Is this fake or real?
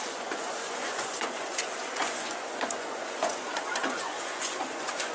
fake